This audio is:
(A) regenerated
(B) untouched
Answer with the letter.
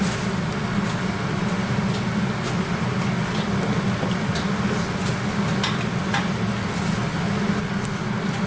B